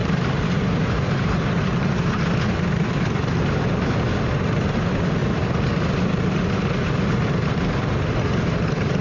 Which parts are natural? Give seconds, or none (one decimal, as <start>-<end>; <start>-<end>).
2.3-9.0